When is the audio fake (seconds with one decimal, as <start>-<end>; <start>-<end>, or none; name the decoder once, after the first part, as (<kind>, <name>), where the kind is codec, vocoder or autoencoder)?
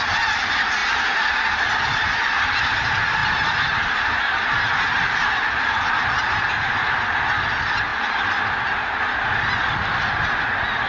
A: none